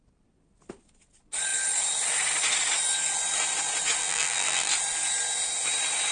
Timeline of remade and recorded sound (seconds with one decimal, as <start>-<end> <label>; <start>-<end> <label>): 0.0-4.0 recorded; 4.0-4.7 remade; 4.7-6.1 recorded